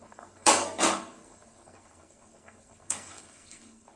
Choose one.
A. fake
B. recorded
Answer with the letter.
A